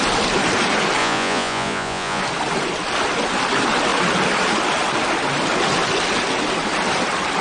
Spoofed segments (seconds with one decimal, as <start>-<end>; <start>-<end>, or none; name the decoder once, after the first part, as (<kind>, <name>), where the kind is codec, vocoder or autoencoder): 1.0-2.2 (vocoder, Vocos)